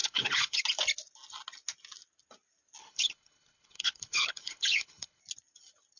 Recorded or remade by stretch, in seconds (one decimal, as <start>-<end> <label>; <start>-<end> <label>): 0.0-0.6 remade; 0.6-2.8 recorded; 2.8-5.2 remade; 5.2-6.0 recorded